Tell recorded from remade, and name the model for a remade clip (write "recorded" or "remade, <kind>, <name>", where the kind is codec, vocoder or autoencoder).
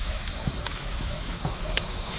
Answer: remade, autoencoder, DAC-VAE